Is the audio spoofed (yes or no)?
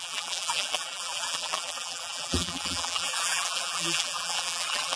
yes